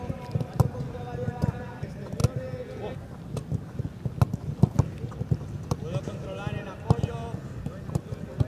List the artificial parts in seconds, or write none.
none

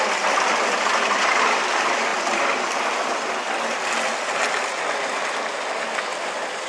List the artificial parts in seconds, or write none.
none

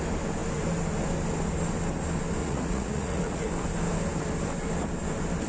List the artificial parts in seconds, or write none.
2.4-3.5 (vocoder, Vocos)

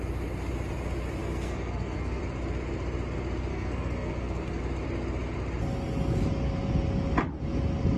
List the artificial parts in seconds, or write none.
1.2-2.2 (codec, SNAC); 3.5-4.6

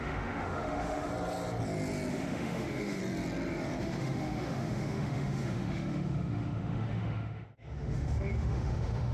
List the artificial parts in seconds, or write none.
0.0-1.1 (autoencoder, DAC-VAE); 2.1-3.0; 3.8-9.1

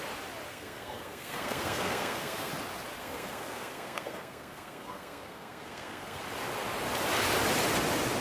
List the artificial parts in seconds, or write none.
0.5-2.5 (codec, SNAC); 3.0-6.2

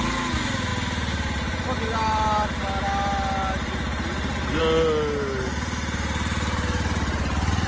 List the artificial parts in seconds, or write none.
none

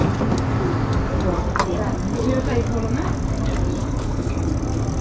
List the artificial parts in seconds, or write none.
3.8-4.5 (codec, HILCodec)